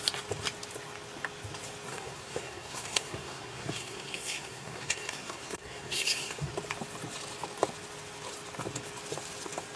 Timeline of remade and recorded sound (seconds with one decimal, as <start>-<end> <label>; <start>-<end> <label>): 0.0-1.9 recorded; 1.9-6.5 remade; 6.5-9.8 recorded